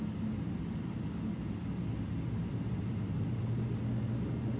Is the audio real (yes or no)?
yes